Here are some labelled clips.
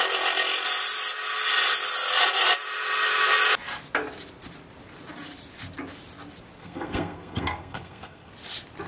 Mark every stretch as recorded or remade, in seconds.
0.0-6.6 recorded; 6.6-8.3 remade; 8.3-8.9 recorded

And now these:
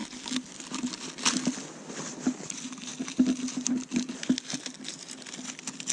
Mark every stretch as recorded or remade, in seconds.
0.0-5.9 recorded

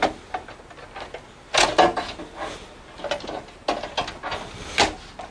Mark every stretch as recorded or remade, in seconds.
0.0-5.3 recorded

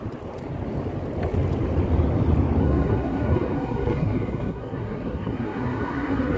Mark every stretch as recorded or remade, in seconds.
0.0-2.6 recorded; 2.6-6.4 remade

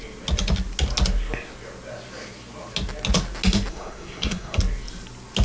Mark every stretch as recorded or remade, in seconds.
0.0-3.7 recorded; 3.7-4.6 remade; 4.6-5.4 recorded

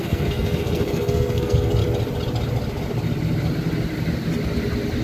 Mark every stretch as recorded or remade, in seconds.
0.0-1.8 remade; 1.8-5.0 recorded

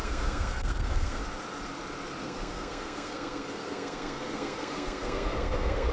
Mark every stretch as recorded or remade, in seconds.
0.0-1.2 remade; 1.2-2.2 recorded; 2.2-5.9 remade

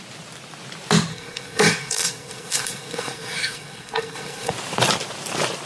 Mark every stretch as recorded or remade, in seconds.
0.0-1.1 recorded; 1.1-4.5 remade; 4.5-5.7 recorded